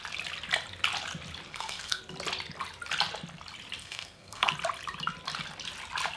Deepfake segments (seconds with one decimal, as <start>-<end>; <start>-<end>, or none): 1.5-2.0; 3.8-4.5